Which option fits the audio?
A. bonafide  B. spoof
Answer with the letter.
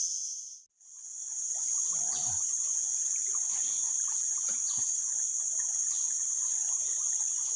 A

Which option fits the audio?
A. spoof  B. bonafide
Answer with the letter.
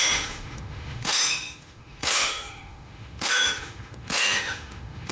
A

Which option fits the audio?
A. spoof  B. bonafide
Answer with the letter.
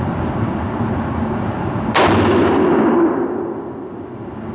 B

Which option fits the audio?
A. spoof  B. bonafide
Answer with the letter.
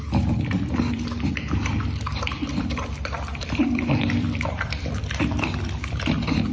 A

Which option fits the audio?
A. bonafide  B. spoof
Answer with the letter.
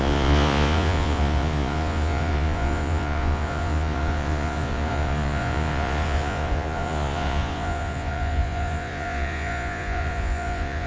B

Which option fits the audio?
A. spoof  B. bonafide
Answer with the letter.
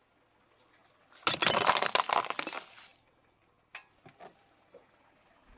B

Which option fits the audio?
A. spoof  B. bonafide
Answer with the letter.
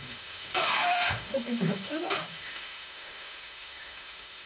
A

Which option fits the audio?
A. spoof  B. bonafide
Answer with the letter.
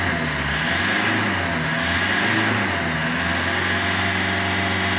B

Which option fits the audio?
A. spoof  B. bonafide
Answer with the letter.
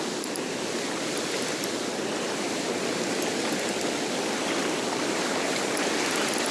B